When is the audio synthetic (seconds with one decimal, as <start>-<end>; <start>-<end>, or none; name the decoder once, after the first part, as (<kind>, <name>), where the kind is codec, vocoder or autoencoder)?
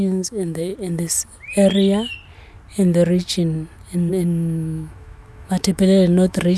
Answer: 0.0-0.7 (autoencoder, DAC-VAE); 4.1-6.6